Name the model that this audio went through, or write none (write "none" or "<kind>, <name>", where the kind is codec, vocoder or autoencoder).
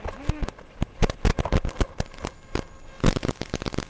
none